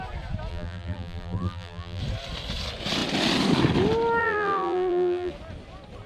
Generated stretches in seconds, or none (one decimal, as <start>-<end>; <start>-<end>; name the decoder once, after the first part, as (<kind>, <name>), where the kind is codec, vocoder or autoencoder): 0.5-2.0 (vocoder, BigVGAN v2); 4.2-5.3